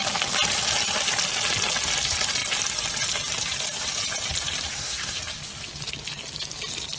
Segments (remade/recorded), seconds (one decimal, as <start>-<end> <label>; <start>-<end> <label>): 0.0-4.7 recorded; 4.7-5.2 remade; 5.2-7.0 recorded